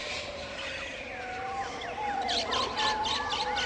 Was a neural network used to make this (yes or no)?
no